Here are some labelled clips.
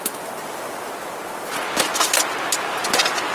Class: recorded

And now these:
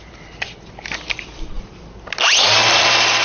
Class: recorded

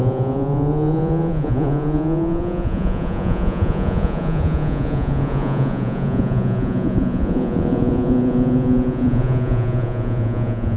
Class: remade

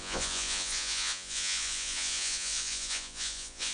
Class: remade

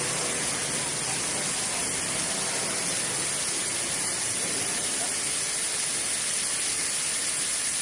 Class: recorded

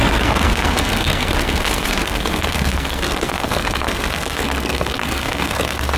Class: remade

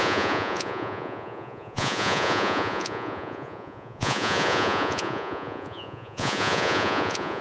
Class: remade